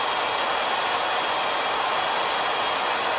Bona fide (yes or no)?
yes